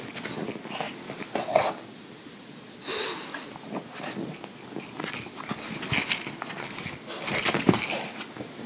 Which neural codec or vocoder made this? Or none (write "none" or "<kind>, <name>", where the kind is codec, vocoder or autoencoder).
none